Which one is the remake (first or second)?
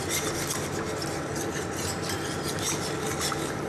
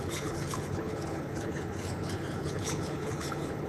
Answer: second